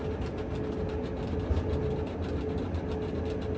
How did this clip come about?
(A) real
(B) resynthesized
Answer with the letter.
A